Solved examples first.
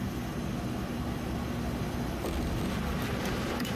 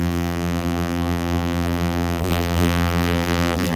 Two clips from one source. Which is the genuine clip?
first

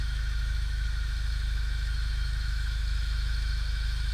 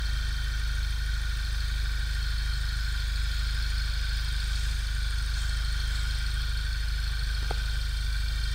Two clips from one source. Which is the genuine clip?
second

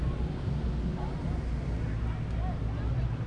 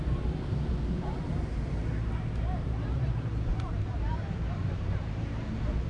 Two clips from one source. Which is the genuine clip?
first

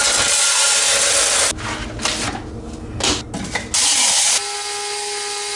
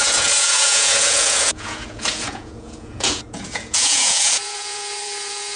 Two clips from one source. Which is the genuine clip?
first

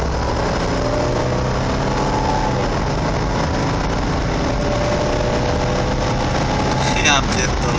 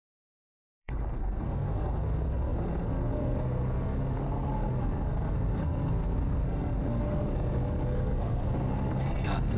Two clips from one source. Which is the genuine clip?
first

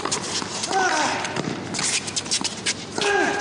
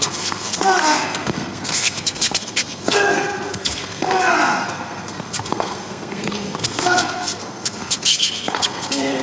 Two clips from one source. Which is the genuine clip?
first